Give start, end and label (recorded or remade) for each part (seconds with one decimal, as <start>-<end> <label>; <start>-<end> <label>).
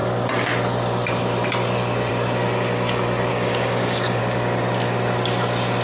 0.0-3.3 recorded; 3.3-4.2 remade; 4.2-5.8 recorded